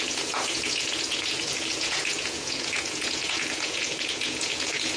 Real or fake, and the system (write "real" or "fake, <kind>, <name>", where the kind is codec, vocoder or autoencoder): fake, vocoder, Vocos